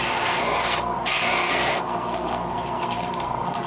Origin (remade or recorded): remade